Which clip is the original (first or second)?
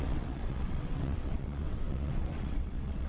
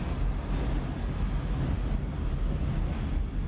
second